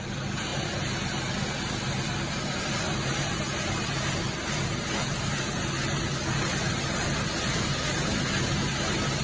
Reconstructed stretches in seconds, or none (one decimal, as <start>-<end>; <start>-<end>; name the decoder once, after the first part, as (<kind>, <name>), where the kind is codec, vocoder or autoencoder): none